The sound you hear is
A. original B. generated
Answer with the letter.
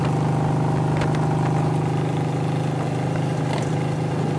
A